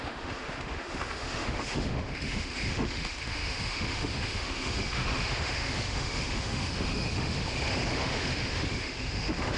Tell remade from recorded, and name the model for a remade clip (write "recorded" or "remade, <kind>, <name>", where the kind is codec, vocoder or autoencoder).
remade, autoencoder, DAC-VAE